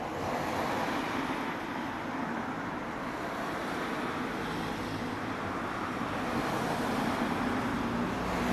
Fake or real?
real